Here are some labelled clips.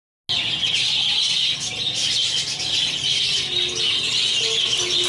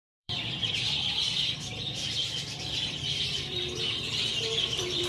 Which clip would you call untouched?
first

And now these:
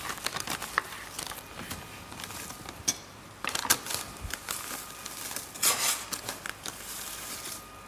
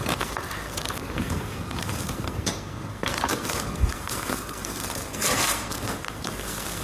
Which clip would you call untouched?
first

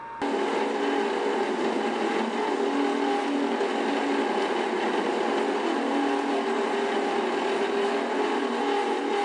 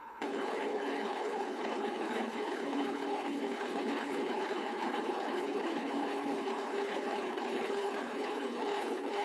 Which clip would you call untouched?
first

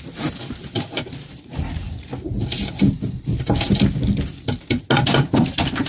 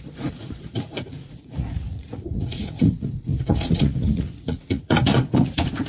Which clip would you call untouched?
first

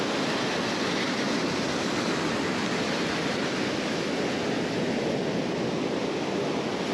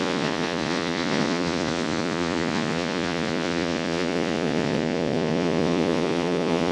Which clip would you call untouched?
first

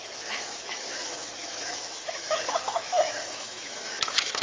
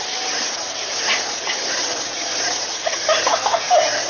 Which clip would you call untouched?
second